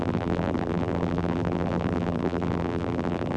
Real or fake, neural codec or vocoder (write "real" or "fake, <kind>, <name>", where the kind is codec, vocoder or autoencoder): fake, vocoder, BigVGAN v2